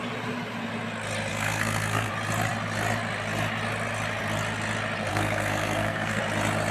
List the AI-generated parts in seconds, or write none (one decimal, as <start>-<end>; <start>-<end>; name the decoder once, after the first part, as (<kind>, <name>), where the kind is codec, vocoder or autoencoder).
1.3-2.1 (codec, SNAC); 5.1-6.2